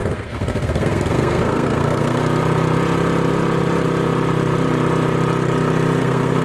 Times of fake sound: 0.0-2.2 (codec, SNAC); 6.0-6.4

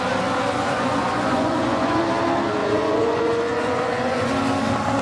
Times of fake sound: 0.6-2.0 (vocoder, Vocos); 2.6-4.3

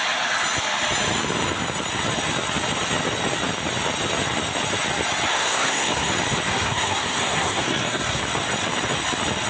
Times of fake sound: 5.3-6.1 (codec, SNAC); 6.5-8.2

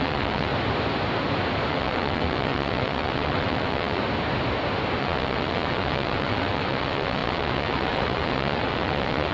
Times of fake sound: 0.0-0.5 (vocoder, WaveNeXt); 1.7-4.0; 5.0-9.3

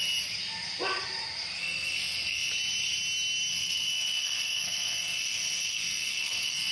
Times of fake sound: 1.6-2.5 (codec, SNAC); 3.5-6.7

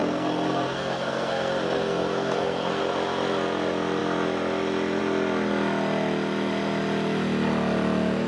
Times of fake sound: 0.0-2.8 (codec, SNAC)

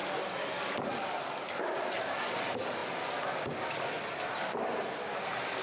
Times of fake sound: none